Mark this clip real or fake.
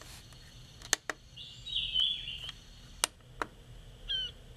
real